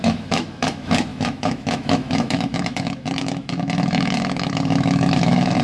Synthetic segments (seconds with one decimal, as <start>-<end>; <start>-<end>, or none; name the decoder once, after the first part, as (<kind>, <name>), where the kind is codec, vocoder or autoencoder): 0.0-5.6 (autoencoder, DAC-VAE)